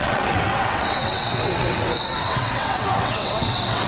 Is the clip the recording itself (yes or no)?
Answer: no